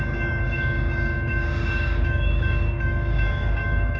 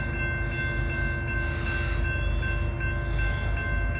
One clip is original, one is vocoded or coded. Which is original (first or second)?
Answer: second